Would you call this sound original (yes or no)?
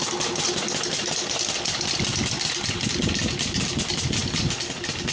yes